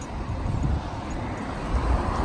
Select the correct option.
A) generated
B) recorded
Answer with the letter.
B